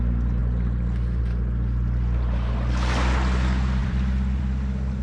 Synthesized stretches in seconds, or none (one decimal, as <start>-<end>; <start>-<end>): 0.4-1.2; 3.8-4.4